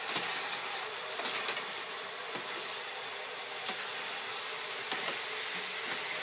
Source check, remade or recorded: recorded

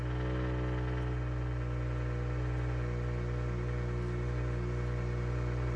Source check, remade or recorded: recorded